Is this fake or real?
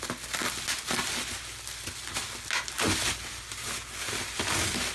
real